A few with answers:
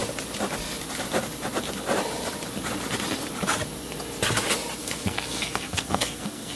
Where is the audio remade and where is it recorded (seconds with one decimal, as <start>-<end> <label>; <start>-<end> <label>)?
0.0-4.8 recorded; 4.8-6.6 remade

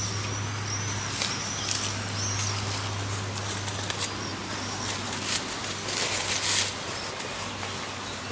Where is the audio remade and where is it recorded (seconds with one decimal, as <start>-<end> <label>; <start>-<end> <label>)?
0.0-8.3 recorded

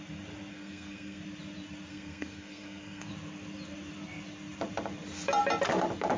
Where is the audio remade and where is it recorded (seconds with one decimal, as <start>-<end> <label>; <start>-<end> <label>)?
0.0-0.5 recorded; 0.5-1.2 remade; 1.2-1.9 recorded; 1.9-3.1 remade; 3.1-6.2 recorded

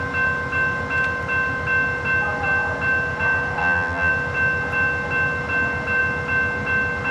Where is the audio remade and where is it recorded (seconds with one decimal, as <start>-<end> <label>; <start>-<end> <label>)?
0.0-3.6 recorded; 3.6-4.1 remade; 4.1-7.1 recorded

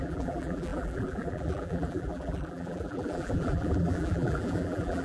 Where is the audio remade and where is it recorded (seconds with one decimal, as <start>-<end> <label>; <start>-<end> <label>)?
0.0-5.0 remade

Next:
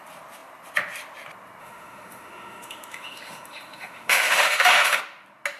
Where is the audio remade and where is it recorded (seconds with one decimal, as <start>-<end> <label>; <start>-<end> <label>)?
0.0-1.6 recorded; 1.6-5.0 remade; 5.0-5.6 recorded

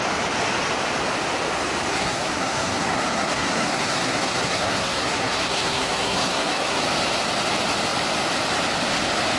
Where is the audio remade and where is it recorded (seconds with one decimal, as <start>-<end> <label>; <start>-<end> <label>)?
0.0-1.9 recorded; 1.9-6.8 remade; 6.8-9.4 recorded

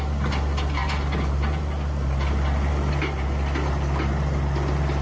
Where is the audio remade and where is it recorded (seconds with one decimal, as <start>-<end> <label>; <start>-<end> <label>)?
0.0-5.0 recorded